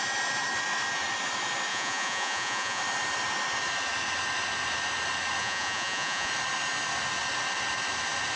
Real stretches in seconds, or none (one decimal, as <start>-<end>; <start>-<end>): 0.0-1.7; 2.8-5.4; 6.3-8.4